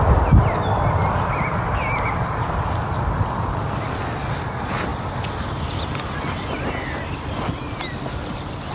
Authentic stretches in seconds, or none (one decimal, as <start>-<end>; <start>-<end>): 0.0-8.7